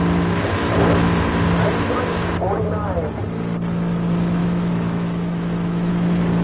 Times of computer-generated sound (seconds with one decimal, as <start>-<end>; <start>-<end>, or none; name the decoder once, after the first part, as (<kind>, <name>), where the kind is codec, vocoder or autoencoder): 4.4-5.9 (autoencoder, DAC-VAE)